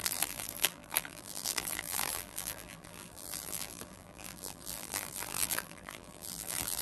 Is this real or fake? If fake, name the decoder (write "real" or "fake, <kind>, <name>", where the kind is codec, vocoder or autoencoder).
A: fake, vocoder, BigVGAN v2